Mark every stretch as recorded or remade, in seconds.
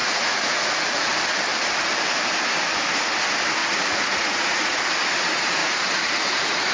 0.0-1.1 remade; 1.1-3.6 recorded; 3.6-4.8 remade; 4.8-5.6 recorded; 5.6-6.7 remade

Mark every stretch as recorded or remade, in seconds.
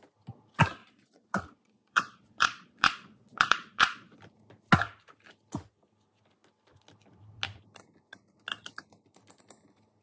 0.0-0.8 recorded; 0.8-4.2 remade; 4.2-10.0 recorded